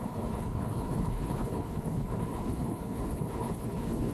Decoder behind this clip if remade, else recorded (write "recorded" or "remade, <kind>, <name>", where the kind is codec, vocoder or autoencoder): remade, codec, HILCodec